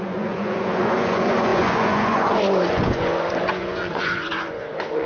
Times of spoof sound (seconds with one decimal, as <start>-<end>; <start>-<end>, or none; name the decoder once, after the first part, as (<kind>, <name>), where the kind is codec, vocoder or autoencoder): 0.0-5.1 (vocoder, Vocos)